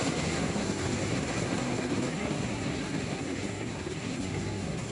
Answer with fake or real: fake